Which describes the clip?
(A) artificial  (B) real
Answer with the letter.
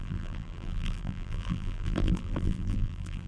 A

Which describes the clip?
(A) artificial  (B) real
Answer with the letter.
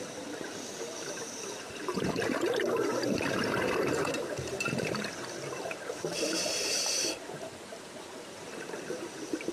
A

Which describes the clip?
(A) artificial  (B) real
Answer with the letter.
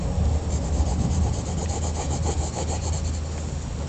B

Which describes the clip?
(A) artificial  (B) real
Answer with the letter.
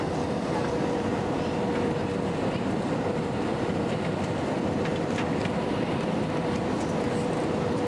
B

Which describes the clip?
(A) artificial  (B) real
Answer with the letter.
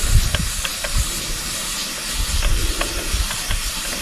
B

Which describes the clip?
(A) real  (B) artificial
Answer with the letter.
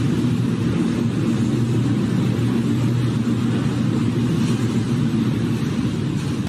A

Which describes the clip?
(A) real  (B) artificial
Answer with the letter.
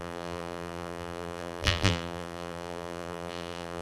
B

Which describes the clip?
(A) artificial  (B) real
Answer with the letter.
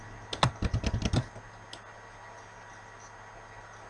B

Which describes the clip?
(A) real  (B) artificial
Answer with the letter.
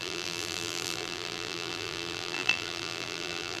B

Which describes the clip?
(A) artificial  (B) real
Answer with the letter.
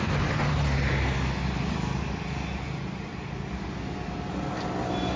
B